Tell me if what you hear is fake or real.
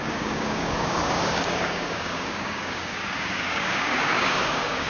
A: fake